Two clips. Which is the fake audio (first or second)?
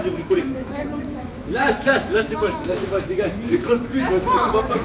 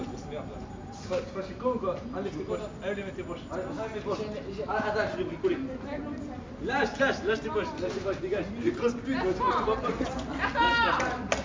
first